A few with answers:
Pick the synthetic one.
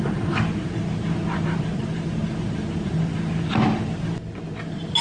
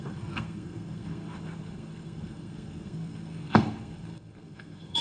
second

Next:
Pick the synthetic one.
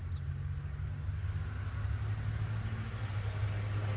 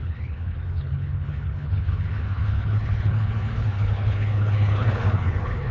second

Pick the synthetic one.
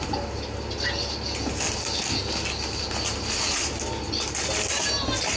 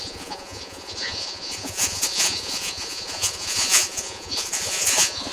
second